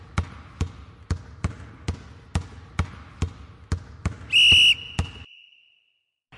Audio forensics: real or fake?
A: real